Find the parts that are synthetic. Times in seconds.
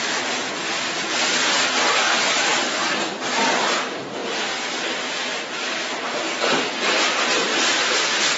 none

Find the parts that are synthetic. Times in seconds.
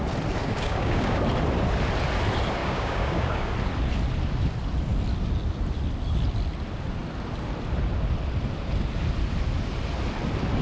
0.4-1.2 (codec, DAC); 2.6-3.5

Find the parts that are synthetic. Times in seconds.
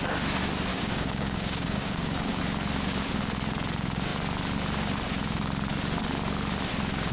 0.7-2.4 (codec, DAC)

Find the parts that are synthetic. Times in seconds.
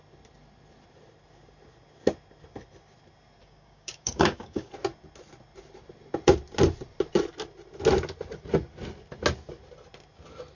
3.4-4.7 (codec, DAC)